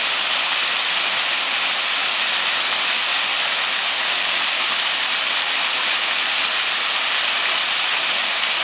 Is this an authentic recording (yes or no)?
yes